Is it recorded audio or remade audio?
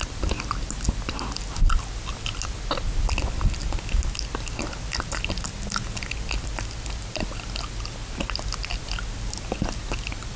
recorded